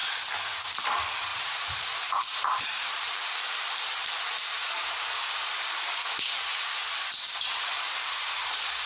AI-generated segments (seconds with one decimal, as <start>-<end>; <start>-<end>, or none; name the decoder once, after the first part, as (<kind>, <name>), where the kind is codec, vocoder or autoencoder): 1.3-6.4 (vocoder, BigVGAN v2)